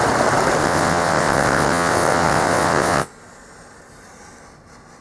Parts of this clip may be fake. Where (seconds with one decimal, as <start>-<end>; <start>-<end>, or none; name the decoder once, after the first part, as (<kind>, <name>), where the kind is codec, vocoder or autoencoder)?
0.6-3.1 (vocoder, WaveNeXt)

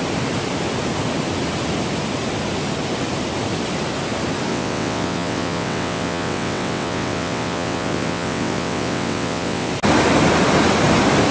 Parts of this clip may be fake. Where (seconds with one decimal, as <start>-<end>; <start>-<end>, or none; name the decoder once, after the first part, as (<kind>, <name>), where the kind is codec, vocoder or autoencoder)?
4.5-9.7 (vocoder, WaveNeXt)

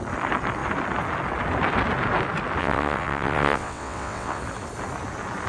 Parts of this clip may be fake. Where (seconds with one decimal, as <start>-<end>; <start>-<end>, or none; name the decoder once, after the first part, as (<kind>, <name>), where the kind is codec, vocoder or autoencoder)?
2.6-4.4 (vocoder, WaveNeXt)

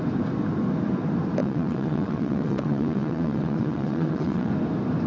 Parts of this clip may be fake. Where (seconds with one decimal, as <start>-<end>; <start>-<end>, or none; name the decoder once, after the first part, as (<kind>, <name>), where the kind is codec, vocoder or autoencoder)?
1.4-4.5 (vocoder, WaveNeXt)

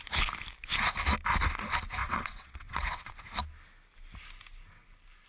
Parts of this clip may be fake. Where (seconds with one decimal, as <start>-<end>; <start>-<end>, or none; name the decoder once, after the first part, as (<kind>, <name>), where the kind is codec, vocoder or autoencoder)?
2.0-3.2 (vocoder, WaveNeXt)